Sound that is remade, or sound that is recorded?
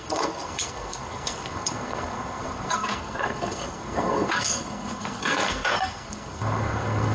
remade